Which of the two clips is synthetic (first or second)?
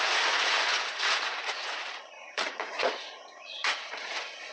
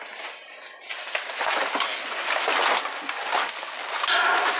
first